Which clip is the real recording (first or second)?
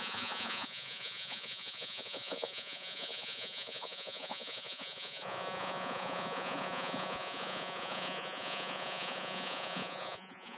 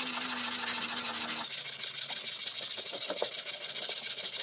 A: second